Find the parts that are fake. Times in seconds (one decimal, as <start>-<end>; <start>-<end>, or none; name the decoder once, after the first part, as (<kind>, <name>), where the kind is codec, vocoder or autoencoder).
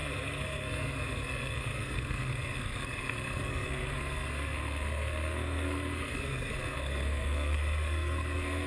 0.0-8.7 (codec, SNAC)